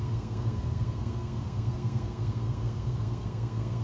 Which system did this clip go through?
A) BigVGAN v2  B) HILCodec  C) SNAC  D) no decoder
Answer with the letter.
C